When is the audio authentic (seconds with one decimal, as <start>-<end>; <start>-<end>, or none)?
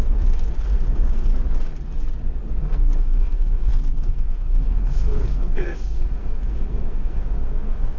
1.3-2.6